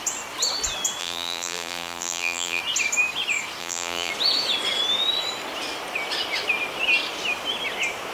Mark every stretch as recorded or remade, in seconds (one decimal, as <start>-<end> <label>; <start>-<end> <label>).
0.0-1.0 recorded; 1.0-2.6 remade; 2.6-3.6 recorded; 3.6-4.1 remade; 4.1-8.1 recorded